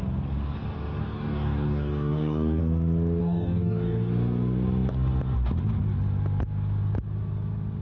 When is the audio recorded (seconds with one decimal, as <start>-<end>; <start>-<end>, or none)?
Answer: 0.0-1.0; 2.6-3.2; 4.1-7.8